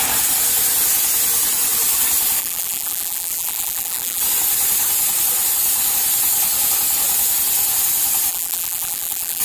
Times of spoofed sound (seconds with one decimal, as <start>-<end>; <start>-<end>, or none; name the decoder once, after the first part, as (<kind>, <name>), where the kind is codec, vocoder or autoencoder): 2.4-4.2 (vocoder, BigVGAN v2); 8.3-9.4